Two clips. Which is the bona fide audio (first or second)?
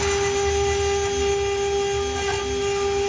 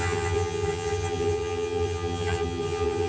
first